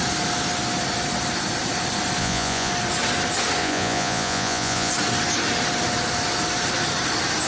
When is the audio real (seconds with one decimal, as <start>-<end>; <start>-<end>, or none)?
0.0-2.2; 2.7-3.6; 4.9-7.5